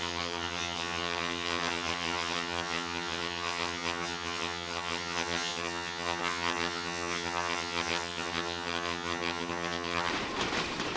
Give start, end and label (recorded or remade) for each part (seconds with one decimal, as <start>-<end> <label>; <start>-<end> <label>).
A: 0.0-10.1 remade; 10.1-11.0 recorded